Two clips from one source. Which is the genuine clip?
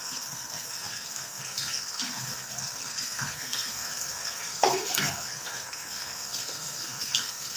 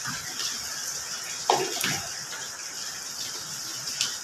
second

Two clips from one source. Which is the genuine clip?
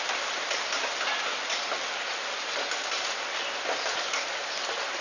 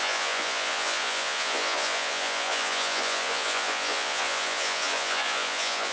first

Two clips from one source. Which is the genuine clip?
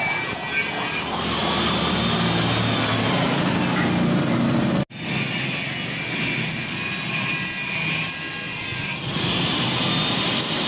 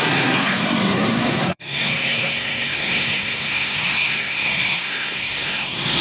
first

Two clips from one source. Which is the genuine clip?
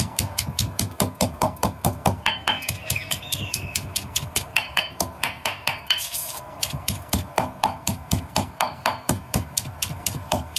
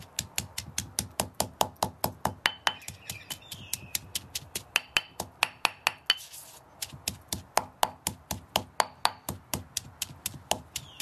second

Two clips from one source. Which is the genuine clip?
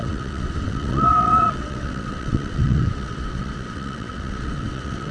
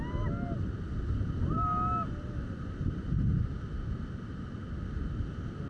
second